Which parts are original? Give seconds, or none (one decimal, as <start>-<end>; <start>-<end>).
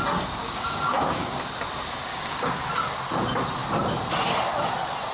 0.0-0.4; 1.3-2.1; 2.7-5.1